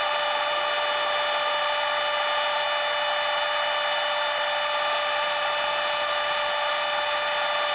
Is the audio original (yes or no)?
yes